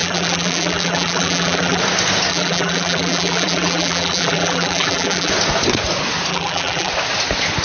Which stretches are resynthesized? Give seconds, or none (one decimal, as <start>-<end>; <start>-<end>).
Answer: 0.0-1.8; 2.3-5.3; 6.3-6.9

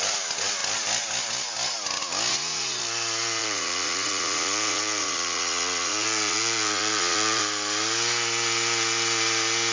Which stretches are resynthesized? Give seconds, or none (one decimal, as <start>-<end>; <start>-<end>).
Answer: 2.3-2.8; 3.4-7.4

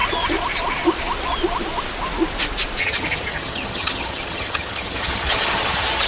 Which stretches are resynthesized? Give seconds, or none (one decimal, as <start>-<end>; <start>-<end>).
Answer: 2.8-6.1

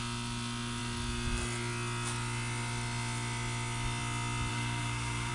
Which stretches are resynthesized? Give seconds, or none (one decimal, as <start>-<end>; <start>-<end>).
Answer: 4.5-5.3